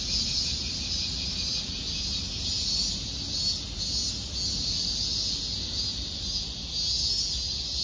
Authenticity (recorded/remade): recorded